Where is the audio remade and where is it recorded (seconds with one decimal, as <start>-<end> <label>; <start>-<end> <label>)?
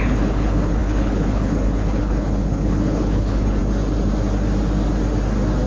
0.0-3.6 remade; 3.6-5.7 recorded